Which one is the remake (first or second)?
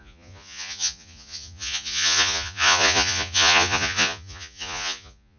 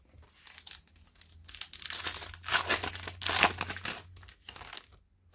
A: first